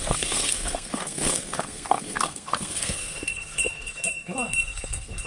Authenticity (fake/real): fake